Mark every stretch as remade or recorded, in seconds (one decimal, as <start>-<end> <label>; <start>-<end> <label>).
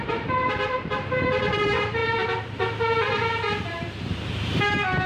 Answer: 0.0-5.1 remade